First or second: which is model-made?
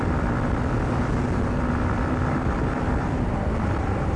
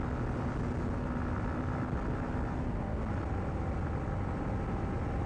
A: first